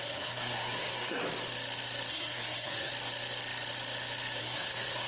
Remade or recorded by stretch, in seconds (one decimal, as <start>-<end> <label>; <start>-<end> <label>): 0.0-1.2 remade; 1.2-2.1 recorded; 2.1-2.9 remade; 2.9-4.4 recorded; 4.4-5.1 remade

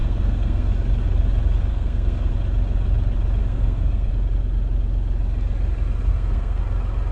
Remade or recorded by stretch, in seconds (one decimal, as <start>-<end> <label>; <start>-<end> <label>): 0.0-0.7 remade; 0.7-1.7 recorded; 1.7-2.3 remade; 2.3-3.4 recorded; 3.4-4.1 remade; 4.1-6.1 recorded; 6.1-6.6 remade; 6.6-7.1 recorded